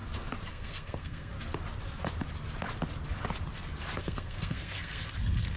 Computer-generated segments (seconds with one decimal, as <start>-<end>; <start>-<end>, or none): 0.5-1.3; 4.0-5.6